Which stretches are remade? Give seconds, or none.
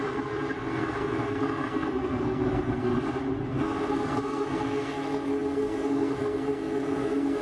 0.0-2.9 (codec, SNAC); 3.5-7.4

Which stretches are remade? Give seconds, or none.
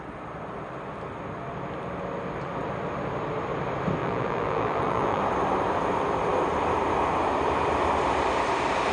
4.0-5.2 (vocoder, BigVGAN v2)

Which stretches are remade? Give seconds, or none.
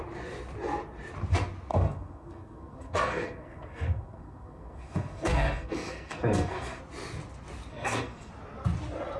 1.7-6.8 (codec, SNAC); 7.7-8.3